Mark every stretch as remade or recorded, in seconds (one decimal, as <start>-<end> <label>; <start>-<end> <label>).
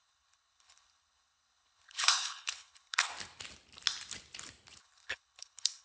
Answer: 0.0-3.1 remade; 3.1-4.8 recorded; 4.8-5.8 remade